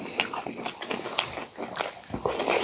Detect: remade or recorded recorded